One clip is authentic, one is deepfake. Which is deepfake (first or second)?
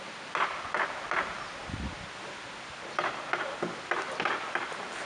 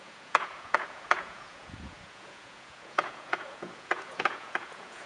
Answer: second